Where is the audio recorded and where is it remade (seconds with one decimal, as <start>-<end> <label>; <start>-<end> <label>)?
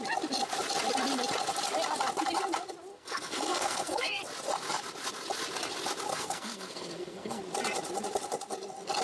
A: 0.0-2.9 recorded; 2.9-4.2 remade; 4.2-6.1 recorded; 6.1-7.4 remade; 7.4-9.0 recorded